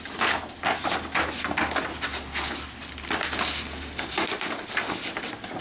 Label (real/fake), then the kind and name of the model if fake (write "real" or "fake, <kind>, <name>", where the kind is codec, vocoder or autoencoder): real